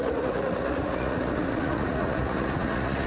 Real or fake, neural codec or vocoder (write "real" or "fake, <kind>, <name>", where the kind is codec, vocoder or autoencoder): fake, vocoder, Vocos